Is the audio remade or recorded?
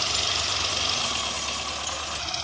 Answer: recorded